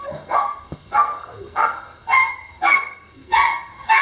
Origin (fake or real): fake